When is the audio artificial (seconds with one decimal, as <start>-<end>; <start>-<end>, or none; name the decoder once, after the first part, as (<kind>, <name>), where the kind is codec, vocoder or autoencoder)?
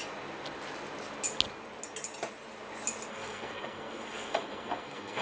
3.1-5.2 (codec, SNAC)